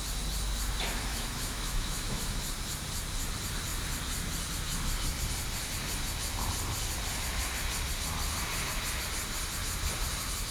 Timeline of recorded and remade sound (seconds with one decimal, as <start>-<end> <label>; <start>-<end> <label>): 0.0-1.1 recorded; 1.1-2.4 remade; 2.4-10.5 recorded